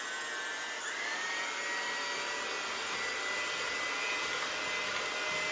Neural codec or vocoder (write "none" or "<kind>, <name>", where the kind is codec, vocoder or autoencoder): none